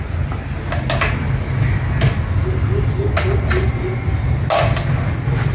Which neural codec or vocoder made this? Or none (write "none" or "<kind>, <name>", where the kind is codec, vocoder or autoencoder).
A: none